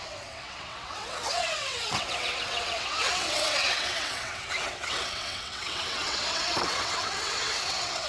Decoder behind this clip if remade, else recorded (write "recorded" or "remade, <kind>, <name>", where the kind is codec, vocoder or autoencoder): remade, vocoder, WaveNeXt